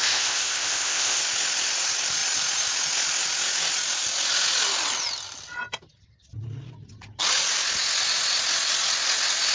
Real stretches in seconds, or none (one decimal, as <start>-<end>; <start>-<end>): 1.2-9.5